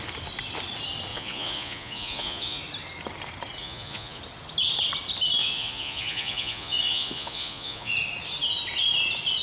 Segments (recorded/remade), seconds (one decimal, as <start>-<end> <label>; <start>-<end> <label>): 0.0-1.1 recorded; 1.1-2.6 remade; 2.6-3.6 recorded; 3.6-4.2 remade; 4.2-5.4 recorded; 5.4-7.9 remade; 7.9-9.4 recorded